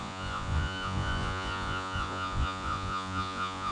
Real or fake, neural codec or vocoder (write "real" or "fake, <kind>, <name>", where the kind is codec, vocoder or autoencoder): fake, vocoder, Vocos